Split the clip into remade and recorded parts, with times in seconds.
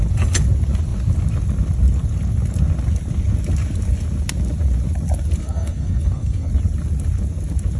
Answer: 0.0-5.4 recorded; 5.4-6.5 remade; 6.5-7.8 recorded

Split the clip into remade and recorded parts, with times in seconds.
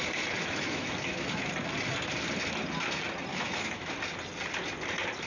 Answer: 0.0-0.4 recorded; 0.4-1.5 remade; 1.5-3.3 recorded; 3.3-3.9 remade; 3.9-5.3 recorded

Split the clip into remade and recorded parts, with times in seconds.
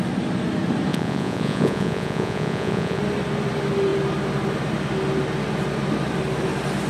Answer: 0.0-0.9 recorded; 0.9-3.0 remade; 3.0-6.9 recorded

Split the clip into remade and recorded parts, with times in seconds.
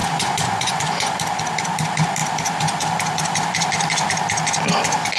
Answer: 0.0-1.2 remade; 1.2-5.2 recorded